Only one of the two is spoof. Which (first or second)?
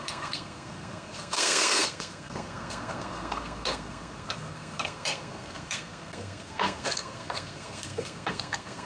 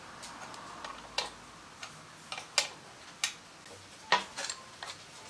first